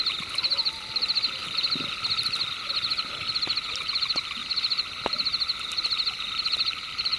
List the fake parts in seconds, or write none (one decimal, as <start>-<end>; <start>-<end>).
none